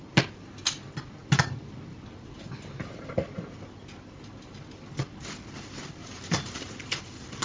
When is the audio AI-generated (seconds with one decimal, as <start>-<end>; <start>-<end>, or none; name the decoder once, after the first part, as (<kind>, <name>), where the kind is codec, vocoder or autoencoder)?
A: 6.0-7.0 (vocoder, BigVGAN v2)